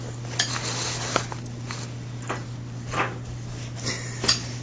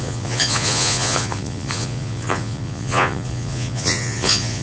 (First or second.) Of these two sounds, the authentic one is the first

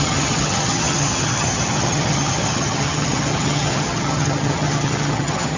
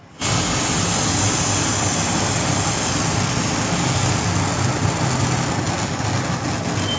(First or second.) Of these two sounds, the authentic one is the second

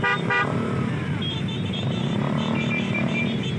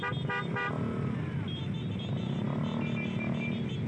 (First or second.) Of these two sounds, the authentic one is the second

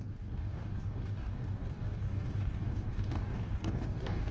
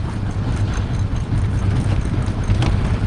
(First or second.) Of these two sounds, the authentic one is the second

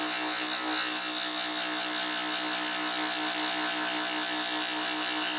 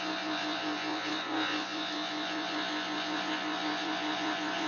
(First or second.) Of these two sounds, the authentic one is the first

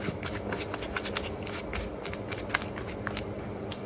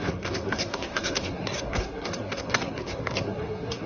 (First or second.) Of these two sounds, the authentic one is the first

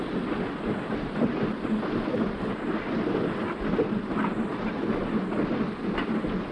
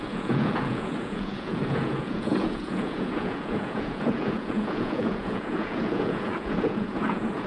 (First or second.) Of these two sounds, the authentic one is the first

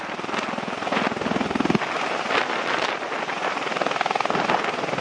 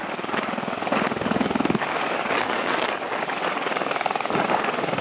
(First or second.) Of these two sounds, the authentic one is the first